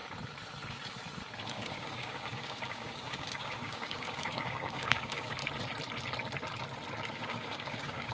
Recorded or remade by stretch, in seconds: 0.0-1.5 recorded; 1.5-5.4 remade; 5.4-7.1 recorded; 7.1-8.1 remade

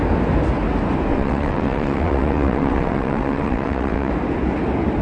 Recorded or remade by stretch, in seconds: 0.0-1.1 recorded; 1.1-4.1 remade; 4.1-5.0 recorded

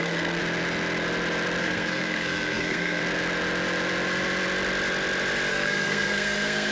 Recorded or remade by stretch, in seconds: 0.0-0.4 remade; 0.4-1.6 recorded; 1.6-3.0 remade; 3.0-5.5 recorded; 5.5-6.7 remade

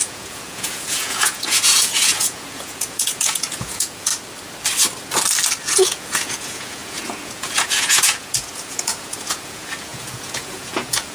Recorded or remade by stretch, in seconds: 0.0-4.1 remade; 4.1-5.6 recorded; 5.6-11.1 remade